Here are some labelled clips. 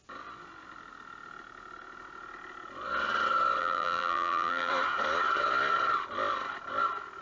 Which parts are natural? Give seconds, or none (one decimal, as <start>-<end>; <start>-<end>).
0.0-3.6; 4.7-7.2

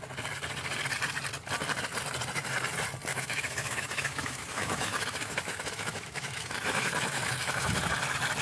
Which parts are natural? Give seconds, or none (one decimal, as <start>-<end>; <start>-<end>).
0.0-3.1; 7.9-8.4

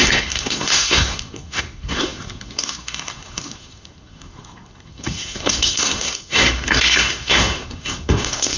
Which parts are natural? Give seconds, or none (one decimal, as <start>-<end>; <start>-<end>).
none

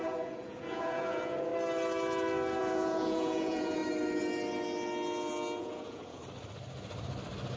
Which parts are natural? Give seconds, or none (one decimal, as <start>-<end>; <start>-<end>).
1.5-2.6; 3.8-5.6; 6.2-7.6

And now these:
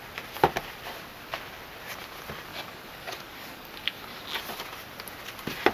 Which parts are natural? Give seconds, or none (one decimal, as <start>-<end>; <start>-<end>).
0.0-2.5; 4.2-5.7